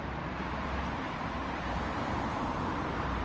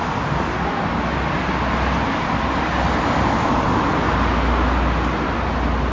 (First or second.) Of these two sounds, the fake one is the first